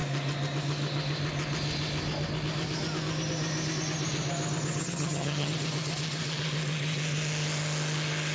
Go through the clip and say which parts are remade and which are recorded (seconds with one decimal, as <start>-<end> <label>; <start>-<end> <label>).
0.0-4.8 recorded; 4.8-5.5 remade; 5.5-8.3 recorded